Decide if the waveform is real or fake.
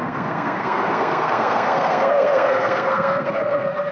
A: fake